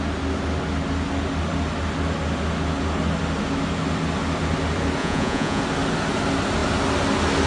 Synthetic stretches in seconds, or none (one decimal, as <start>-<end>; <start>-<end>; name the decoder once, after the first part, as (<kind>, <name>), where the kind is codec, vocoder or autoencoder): 5.0-5.6 (vocoder, Vocos)